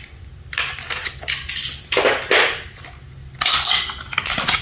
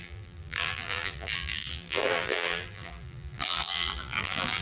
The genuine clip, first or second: first